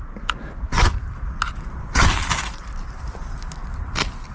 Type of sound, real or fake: real